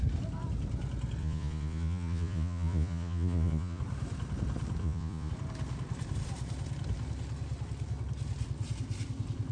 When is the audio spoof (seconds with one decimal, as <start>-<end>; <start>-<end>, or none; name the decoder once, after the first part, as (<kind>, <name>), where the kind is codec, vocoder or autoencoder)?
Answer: 1.2-3.8 (vocoder, Vocos); 4.8-5.3